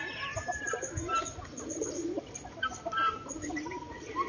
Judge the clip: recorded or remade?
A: recorded